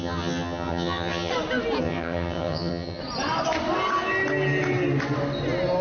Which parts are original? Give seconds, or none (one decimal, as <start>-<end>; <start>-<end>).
1.3-1.8; 3.0-5.8